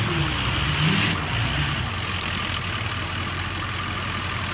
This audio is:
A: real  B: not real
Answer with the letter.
A